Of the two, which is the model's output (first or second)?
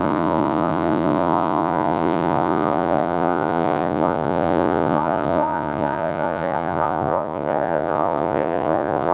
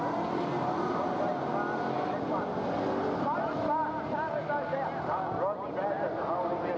first